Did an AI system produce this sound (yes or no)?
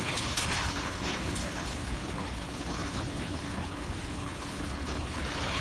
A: yes